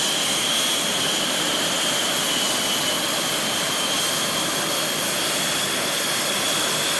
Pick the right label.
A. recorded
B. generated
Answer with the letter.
A